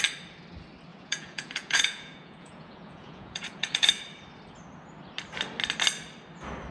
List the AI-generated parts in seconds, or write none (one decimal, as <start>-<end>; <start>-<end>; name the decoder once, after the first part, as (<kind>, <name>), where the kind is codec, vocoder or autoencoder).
0.9-4.0 (vocoder, Vocos)